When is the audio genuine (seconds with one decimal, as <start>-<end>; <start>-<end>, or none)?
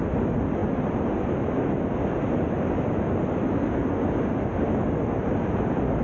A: 0.0-6.0